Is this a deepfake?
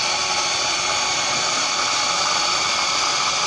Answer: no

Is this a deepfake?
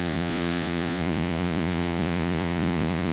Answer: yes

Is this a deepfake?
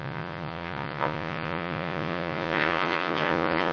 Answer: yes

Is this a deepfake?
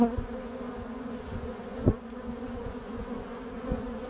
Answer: yes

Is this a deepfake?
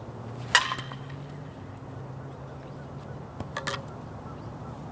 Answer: no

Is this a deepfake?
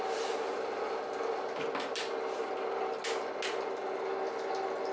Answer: no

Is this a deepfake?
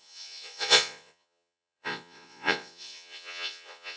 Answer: yes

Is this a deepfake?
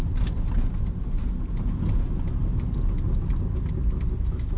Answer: no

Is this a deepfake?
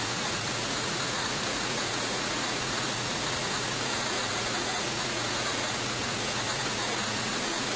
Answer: yes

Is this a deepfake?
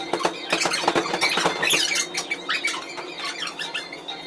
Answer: no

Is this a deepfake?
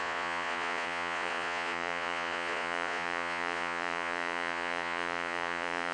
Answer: yes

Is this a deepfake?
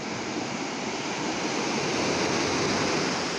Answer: no